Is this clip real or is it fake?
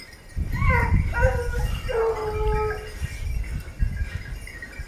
real